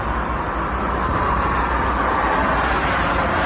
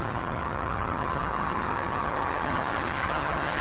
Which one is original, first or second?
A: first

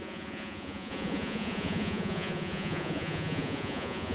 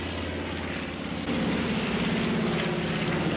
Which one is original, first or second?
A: second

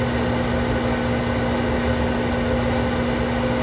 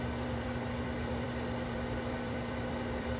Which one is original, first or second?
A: first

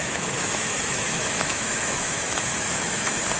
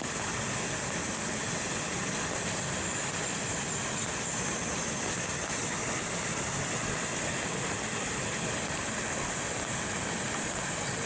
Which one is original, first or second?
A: second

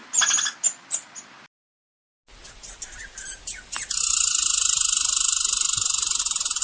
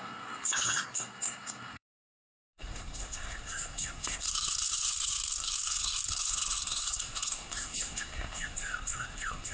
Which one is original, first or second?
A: first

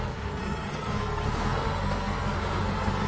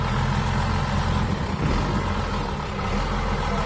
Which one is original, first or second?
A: second